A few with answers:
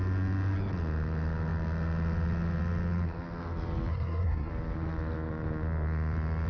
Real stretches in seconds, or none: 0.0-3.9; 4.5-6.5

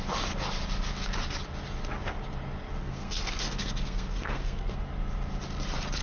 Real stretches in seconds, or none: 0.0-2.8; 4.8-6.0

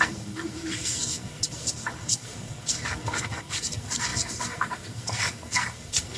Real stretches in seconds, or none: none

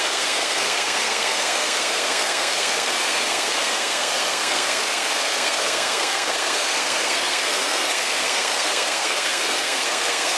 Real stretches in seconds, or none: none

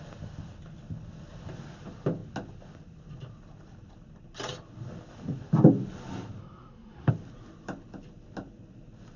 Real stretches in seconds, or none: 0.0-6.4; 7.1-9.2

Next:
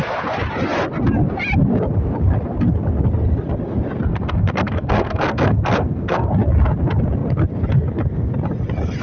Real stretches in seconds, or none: 0.0-4.1; 6.3-9.0